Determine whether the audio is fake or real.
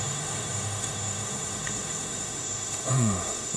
fake